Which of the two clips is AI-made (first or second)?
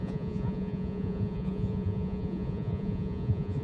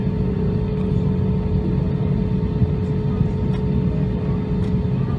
first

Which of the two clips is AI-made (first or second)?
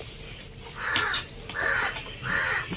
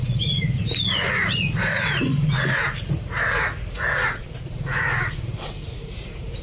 second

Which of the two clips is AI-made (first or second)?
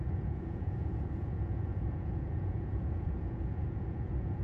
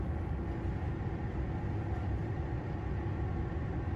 first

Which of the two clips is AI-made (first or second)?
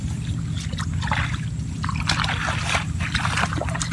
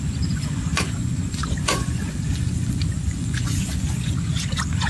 second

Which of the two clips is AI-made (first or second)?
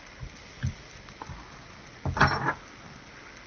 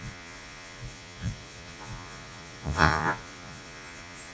second